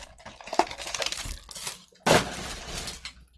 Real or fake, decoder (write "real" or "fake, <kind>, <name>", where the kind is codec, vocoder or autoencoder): real